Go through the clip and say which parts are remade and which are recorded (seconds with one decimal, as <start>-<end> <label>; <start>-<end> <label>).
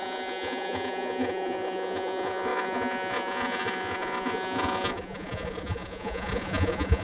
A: 0.0-7.0 remade